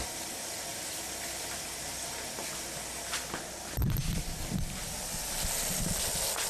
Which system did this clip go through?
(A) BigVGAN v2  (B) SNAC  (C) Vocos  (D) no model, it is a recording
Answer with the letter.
D